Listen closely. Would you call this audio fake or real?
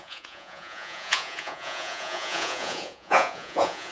fake